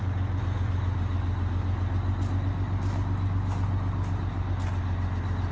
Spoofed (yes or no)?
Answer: no